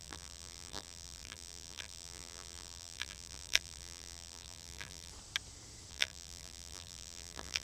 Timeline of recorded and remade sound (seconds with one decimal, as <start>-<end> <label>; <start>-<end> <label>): 0.0-5.1 remade; 5.1-5.9 recorded; 5.9-7.6 remade